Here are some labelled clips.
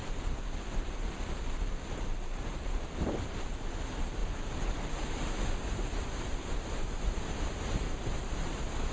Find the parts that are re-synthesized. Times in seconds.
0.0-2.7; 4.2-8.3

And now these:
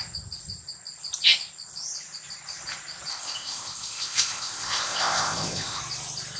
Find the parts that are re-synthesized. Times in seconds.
3.1-5.8

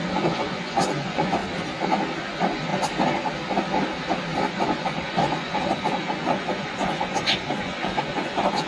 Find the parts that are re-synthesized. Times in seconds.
0.0-1.4; 2.3-2.7; 4.5-8.7

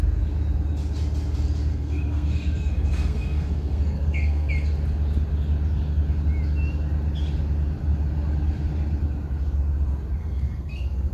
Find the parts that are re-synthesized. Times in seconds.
1.7-4.5; 10.2-11.1